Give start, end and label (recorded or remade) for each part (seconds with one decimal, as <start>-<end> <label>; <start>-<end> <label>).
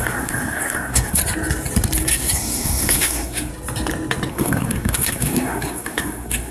0.0-1.2 remade; 1.2-2.1 recorded; 2.1-3.5 remade; 3.5-4.3 recorded; 4.3-6.5 remade